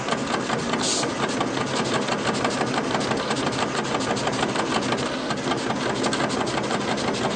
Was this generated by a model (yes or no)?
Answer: no